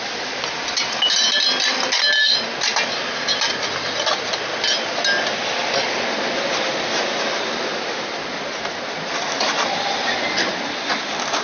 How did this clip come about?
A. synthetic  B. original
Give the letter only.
B